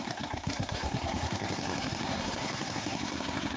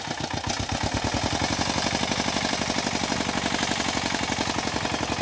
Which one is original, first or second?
second